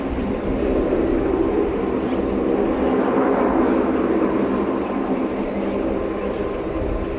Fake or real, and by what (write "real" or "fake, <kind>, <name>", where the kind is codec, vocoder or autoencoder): real